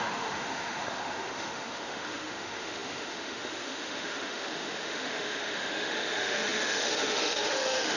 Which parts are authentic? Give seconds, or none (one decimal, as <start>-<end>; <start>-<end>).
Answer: none